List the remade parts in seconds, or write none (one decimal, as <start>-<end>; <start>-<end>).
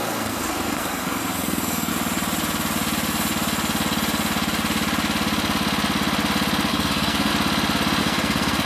0.0-1.9; 6.7-7.3; 8.0-8.7